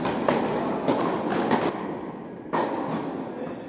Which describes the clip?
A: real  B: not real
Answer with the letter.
A